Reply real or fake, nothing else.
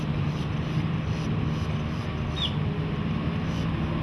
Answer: real